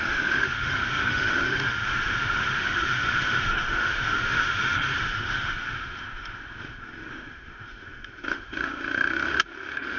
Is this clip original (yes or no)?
no